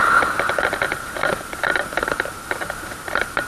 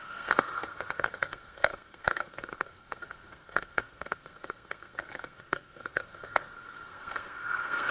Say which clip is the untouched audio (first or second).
first